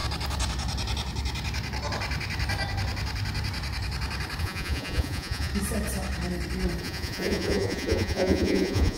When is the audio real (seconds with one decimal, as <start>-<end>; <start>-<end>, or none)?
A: 0.0-4.4; 5.5-6.8